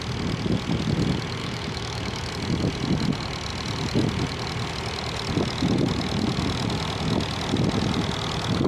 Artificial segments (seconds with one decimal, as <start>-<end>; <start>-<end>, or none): 1.4-2.3